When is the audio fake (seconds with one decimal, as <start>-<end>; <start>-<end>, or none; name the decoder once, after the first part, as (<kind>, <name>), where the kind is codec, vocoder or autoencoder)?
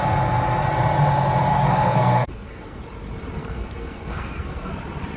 1.5-2.8 (codec, SNAC); 3.4-4.7